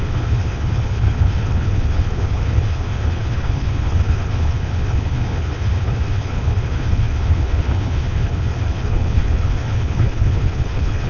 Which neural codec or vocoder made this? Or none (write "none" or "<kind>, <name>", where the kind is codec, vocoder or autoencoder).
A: codec, HILCodec